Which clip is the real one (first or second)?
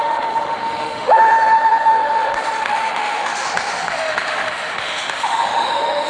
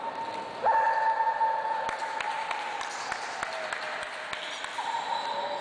second